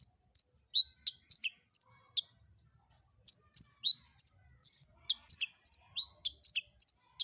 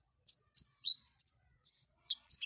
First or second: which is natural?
first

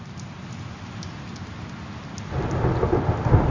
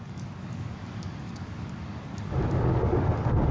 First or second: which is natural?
first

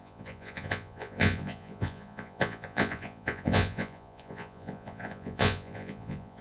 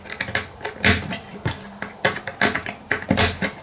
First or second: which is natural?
second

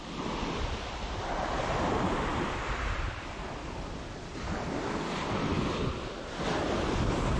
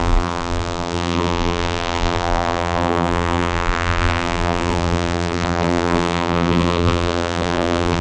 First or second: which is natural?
first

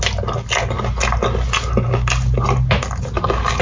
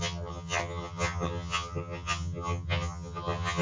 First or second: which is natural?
first